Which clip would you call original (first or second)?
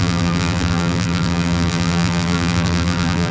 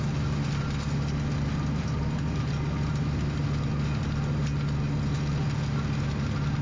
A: second